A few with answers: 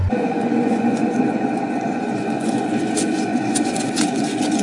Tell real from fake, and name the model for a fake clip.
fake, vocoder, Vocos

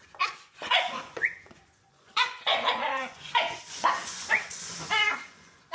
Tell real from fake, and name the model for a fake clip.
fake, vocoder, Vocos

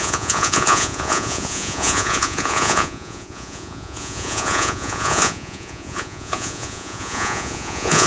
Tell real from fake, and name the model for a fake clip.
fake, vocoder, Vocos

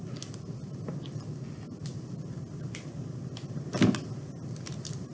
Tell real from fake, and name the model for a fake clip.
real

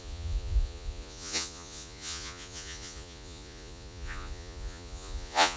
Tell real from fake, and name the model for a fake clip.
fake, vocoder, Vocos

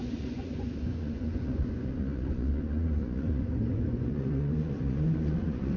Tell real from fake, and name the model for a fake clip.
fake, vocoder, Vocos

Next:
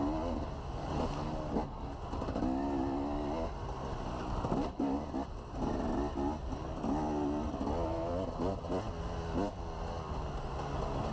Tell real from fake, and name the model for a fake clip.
real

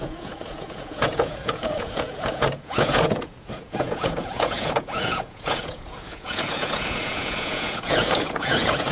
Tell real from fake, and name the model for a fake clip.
fake, vocoder, Vocos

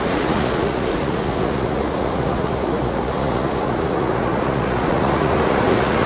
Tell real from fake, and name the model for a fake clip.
fake, vocoder, Vocos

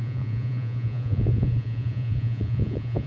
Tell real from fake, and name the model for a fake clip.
fake, vocoder, Vocos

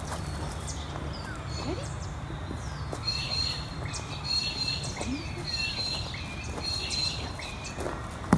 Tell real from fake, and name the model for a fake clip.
real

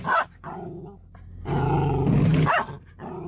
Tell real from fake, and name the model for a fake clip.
real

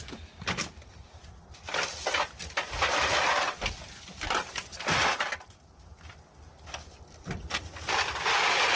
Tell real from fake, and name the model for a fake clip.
real